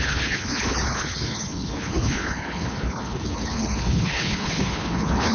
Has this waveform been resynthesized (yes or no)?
yes